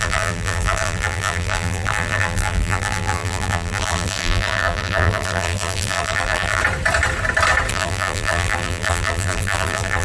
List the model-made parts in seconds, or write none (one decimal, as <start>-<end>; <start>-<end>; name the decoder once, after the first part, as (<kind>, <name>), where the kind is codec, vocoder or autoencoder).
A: 0.0-6.6 (vocoder, BigVGAN v2); 7.7-10.0